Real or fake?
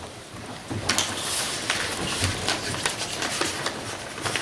real